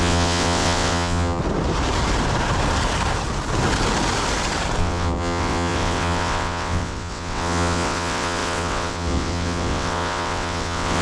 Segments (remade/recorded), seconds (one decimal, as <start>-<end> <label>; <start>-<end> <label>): 0.0-1.4 remade; 1.4-4.8 recorded; 4.8-11.0 remade